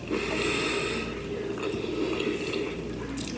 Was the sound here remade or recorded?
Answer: recorded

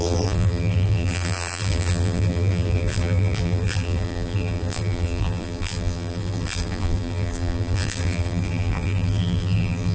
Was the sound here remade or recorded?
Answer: remade